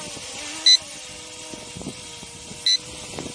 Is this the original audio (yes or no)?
yes